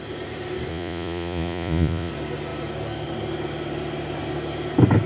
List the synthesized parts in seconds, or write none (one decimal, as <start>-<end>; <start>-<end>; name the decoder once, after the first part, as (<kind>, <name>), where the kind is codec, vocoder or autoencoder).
0.7-2.1 (vocoder, Vocos)